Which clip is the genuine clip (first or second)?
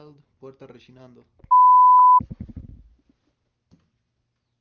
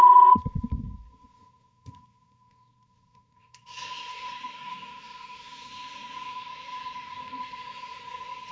first